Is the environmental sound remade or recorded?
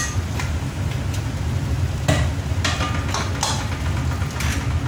recorded